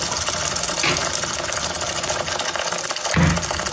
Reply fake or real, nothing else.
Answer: real